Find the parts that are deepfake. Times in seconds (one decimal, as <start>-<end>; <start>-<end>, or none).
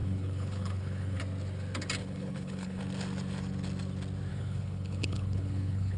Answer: 0.0-1.2; 2.0-2.8; 4.3-6.0